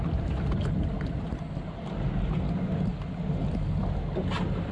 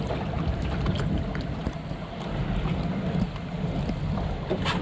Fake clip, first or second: second